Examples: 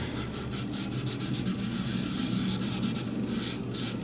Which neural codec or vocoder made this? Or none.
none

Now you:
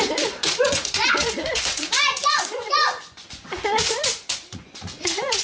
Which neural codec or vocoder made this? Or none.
vocoder, Vocos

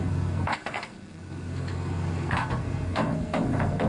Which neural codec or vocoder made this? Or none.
codec, SNAC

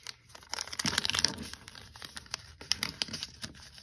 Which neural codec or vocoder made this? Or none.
vocoder, BigVGAN v2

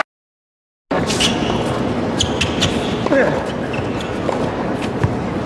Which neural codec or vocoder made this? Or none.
none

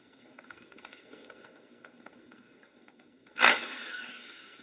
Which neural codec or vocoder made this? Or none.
codec, SNAC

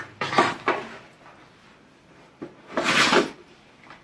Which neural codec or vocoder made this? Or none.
none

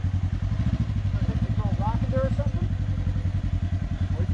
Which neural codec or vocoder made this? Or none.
none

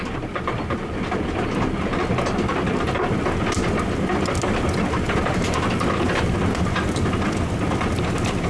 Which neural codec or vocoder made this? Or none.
none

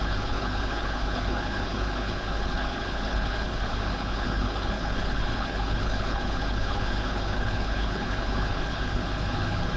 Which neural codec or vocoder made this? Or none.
codec, HILCodec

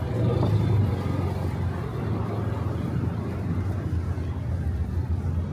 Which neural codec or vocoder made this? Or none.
none